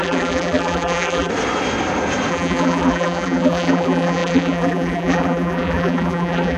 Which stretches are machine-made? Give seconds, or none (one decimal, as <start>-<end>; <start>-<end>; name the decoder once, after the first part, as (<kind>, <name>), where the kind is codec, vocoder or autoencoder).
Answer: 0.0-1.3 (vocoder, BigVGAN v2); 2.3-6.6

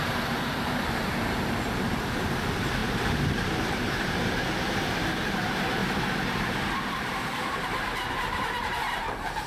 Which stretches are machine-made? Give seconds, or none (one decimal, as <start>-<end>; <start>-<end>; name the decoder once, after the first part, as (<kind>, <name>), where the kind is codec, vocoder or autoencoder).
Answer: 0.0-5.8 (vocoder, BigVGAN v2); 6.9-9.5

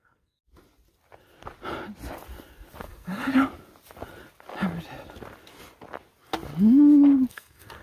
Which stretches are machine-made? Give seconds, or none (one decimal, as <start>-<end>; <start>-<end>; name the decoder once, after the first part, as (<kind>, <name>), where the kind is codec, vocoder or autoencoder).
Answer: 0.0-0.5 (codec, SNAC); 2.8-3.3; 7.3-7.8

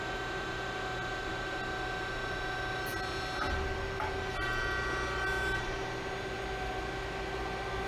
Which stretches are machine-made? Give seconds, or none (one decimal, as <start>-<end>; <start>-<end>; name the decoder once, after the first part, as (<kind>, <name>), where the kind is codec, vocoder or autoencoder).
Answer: none

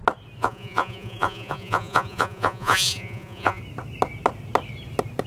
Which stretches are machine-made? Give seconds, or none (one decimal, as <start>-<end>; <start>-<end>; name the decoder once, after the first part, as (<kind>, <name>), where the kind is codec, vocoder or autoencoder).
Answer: 0.4-3.6 (vocoder, Vocos)

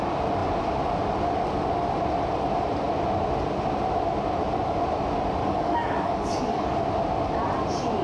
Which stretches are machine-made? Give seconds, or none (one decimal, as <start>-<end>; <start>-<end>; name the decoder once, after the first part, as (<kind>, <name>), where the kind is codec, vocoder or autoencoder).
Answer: 5.4-6.8 (codec, DAC)

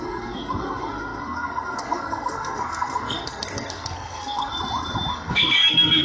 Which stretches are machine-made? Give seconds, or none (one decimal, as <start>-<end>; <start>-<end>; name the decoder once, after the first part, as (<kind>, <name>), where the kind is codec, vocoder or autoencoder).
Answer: 0.0-4.5 (codec, SNAC); 5.1-6.0